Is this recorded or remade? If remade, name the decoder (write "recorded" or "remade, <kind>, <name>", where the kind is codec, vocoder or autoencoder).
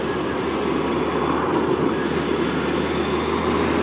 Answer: recorded